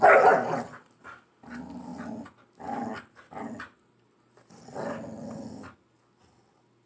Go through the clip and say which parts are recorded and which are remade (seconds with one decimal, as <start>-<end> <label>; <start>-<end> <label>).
0.0-6.9 recorded